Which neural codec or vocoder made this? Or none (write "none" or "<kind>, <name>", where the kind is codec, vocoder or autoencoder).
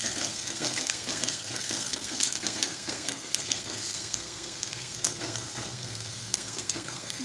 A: codec, SNAC